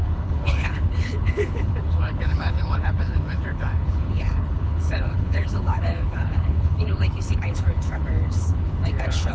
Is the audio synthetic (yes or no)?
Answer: yes